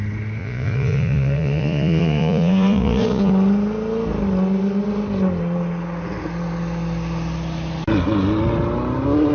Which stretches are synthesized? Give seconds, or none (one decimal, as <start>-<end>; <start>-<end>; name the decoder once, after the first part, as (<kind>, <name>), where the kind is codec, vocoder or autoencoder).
0.4-3.3 (vocoder, Vocos)